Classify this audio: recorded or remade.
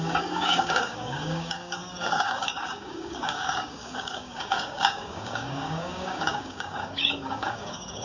remade